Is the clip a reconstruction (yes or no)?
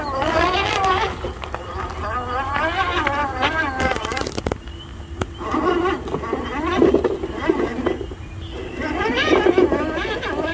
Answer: no